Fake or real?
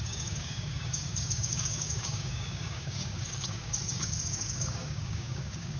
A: fake